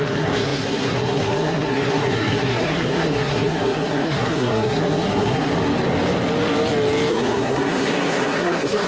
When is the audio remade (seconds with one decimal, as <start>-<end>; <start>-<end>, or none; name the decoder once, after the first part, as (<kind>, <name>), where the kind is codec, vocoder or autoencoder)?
0.0-5.5 (codec, SNAC); 7.1-8.9